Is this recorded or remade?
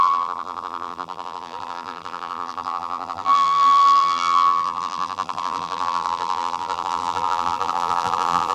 remade